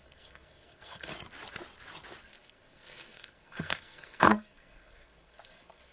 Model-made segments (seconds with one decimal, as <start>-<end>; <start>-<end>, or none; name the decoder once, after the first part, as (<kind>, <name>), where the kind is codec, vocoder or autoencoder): 0.0-1.1 (codec, SNAC); 2.2-5.9